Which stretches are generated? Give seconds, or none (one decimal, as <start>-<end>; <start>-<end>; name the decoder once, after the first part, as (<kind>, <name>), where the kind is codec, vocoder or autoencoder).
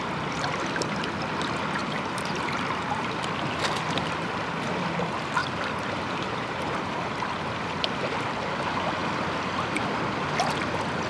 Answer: 1.8-2.4 (vocoder, BigVGAN v2); 5.4-6.7